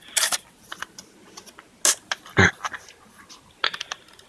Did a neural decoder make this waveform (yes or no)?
no